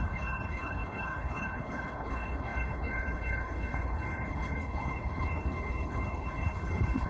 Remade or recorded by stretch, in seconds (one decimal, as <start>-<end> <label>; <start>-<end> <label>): 0.0-7.1 remade